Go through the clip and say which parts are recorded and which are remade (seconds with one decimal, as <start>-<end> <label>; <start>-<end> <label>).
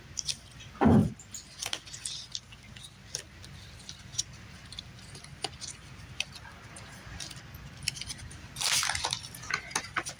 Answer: 0.0-4.1 recorded; 4.1-5.4 remade; 5.4-10.2 recorded